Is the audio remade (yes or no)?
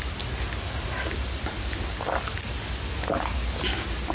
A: no